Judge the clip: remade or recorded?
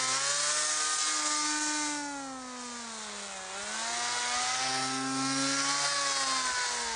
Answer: recorded